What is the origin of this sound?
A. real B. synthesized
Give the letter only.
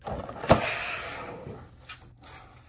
A